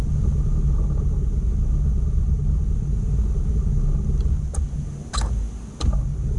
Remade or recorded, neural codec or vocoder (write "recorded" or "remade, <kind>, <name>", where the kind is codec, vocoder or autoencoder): recorded